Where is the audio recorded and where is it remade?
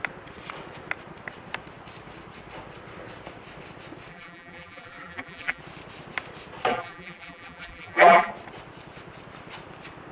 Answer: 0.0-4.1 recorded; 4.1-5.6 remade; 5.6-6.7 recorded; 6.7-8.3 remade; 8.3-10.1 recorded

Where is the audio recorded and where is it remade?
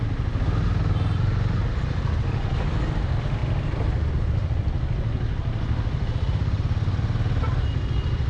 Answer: 0.0-8.3 recorded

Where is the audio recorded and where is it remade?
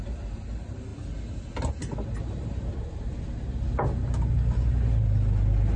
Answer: 0.0-5.8 recorded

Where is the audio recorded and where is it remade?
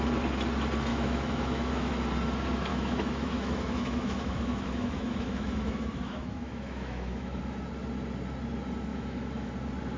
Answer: 0.0-0.9 recorded; 0.9-1.9 remade; 1.9-2.7 recorded; 2.7-7.4 remade; 7.4-8.9 recorded; 8.9-9.5 remade; 9.5-10.0 recorded